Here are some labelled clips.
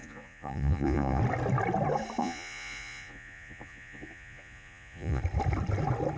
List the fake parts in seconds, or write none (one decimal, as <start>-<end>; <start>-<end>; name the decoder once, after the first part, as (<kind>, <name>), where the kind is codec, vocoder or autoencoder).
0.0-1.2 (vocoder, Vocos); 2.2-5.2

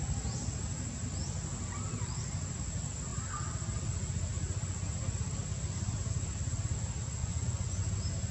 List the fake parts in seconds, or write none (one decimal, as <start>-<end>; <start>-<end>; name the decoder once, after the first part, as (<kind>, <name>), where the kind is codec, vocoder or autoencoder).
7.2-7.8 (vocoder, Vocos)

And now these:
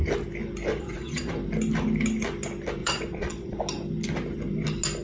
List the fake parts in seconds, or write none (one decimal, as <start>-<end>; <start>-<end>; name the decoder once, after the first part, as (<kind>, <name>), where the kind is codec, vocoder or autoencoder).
0.7-1.3 (vocoder, Vocos); 2.8-3.6

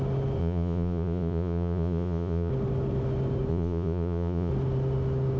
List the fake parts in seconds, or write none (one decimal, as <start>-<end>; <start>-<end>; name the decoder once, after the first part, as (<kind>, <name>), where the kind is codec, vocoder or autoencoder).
0.4-2.5 (vocoder, Vocos); 3.5-4.5

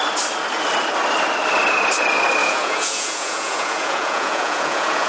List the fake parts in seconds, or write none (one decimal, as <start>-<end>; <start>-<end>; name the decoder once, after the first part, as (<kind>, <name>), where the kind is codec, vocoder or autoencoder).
2.4-5.1 (vocoder, Vocos)

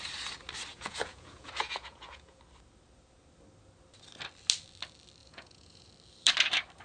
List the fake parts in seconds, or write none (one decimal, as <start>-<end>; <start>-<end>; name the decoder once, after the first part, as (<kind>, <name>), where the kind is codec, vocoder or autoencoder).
0.7-2.4 (vocoder, Vocos); 5.2-5.9

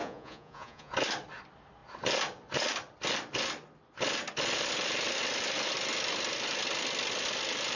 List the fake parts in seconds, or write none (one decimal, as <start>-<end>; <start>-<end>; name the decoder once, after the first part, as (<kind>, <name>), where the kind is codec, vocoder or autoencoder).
0.0-0.9 (vocoder, Vocos)